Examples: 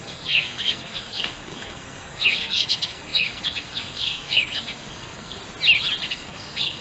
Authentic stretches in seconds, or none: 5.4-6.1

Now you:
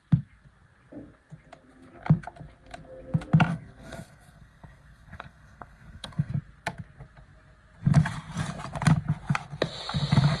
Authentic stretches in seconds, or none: 0.0-3.5; 6.3-10.4

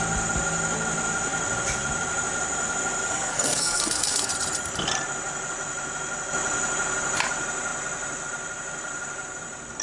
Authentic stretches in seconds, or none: 0.0-3.1; 4.3-9.8

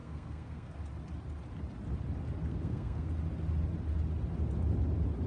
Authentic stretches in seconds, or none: 0.7-2.5; 3.1-5.3